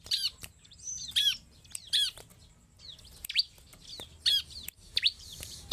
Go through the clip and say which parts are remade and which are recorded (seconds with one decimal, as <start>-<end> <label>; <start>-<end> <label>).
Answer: 0.0-0.9 remade; 0.9-4.3 recorded; 4.3-5.7 remade